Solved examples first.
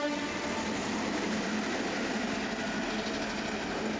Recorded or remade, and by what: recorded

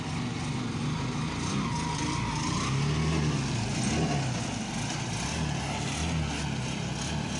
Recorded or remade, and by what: recorded